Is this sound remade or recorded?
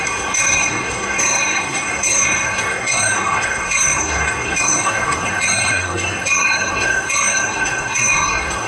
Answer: remade